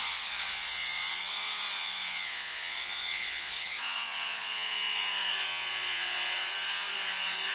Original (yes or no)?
no